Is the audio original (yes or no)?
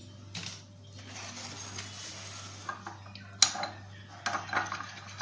yes